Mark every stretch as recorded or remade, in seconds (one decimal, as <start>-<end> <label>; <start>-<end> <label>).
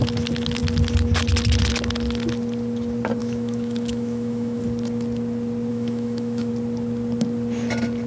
0.0-3.2 recorded; 3.2-4.6 remade; 4.6-5.7 recorded; 5.7-6.5 remade; 6.5-8.1 recorded